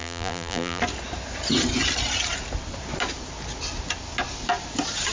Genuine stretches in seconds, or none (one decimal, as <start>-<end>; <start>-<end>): 0.8-5.1